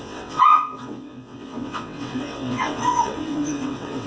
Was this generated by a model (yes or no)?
yes